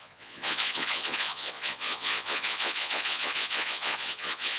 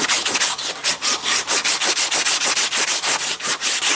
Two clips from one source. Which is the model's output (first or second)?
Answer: first